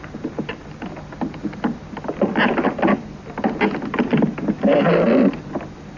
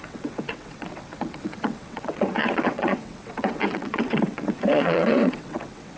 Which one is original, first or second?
first